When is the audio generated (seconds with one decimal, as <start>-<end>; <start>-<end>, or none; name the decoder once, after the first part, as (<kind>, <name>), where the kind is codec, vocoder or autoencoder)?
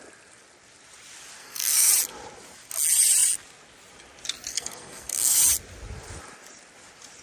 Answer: 1.4-1.9 (codec, SNAC); 4.5-5.4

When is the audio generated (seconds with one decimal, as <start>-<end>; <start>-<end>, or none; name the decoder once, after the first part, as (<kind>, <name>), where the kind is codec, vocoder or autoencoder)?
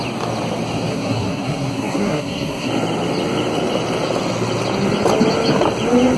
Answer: 0.9-2.7 (codec, SNAC)